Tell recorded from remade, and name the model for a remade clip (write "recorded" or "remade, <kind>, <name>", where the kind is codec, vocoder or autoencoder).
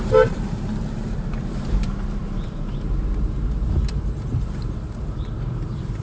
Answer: remade, vocoder, BigVGAN v2